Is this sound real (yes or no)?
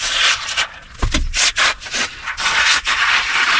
yes